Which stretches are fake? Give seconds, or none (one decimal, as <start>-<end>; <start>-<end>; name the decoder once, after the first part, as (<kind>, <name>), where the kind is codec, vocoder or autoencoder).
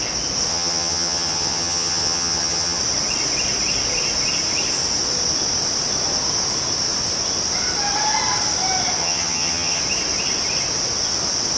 0.5-2.8 (vocoder, HiFi-GAN); 9.0-9.8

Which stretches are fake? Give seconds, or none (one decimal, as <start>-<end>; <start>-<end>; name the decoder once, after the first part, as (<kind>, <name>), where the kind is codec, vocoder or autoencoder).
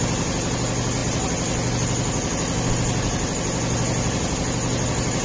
none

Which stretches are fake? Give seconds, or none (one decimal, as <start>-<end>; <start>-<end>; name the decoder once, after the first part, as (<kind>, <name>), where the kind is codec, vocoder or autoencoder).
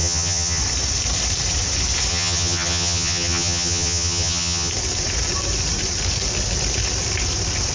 0.0-0.6 (vocoder, HiFi-GAN); 2.1-4.7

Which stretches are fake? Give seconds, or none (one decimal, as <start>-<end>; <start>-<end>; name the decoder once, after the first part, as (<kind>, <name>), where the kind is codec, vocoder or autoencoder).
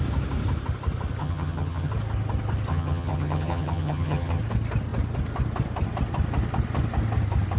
1.2-1.9 (vocoder, HiFi-GAN); 2.7-4.4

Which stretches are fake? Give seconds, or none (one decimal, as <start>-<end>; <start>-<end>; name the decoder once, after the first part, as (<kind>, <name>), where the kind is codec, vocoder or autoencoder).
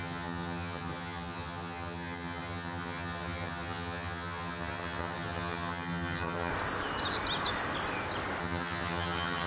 0.0-6.5 (vocoder, HiFi-GAN); 8.4-9.5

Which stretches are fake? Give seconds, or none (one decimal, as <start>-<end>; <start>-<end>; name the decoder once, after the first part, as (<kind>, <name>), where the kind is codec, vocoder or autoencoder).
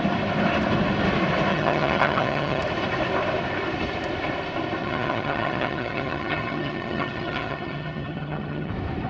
1.5-2.6 (vocoder, HiFi-GAN); 4.8-8.7